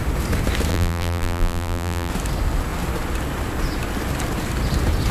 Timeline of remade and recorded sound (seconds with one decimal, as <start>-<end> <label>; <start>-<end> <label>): 0.0-0.7 recorded; 0.7-2.1 remade; 2.1-5.1 recorded